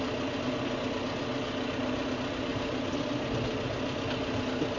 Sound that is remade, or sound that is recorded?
recorded